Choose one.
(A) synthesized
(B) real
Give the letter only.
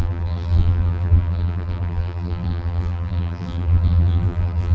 A